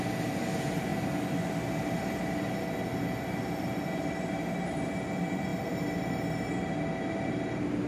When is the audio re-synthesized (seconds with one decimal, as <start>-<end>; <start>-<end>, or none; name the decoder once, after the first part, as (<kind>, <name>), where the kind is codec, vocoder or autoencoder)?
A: none